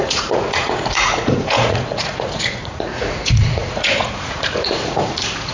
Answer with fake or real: fake